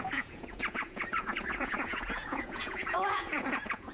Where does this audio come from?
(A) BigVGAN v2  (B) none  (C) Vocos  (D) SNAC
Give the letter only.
C